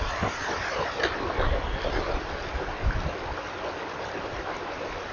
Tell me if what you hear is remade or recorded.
recorded